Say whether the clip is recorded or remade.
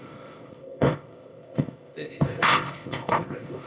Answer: remade